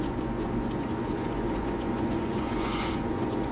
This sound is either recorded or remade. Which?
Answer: remade